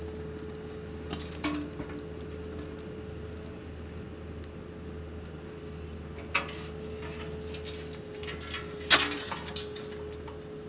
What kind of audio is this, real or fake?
real